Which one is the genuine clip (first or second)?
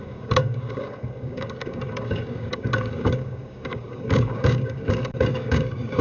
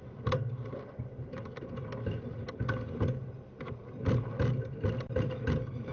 second